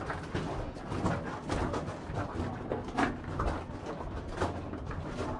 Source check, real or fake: real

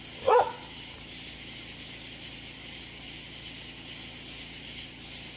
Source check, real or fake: real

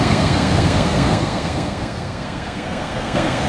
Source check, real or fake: fake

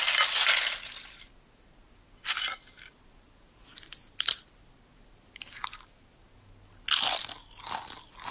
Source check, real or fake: real